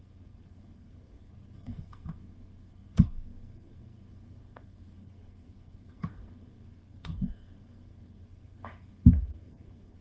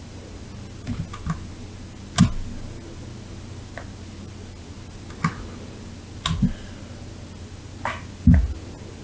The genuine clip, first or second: second